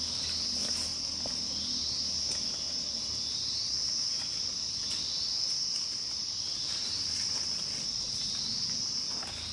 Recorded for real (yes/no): yes